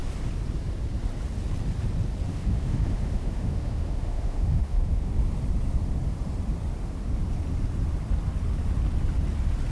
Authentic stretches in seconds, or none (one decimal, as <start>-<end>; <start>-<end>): 0.0-2.3; 5.1-9.7